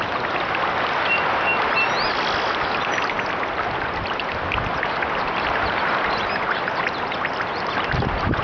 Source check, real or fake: real